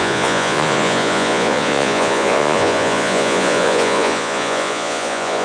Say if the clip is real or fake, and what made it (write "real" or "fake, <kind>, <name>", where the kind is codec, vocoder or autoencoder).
fake, vocoder, Vocos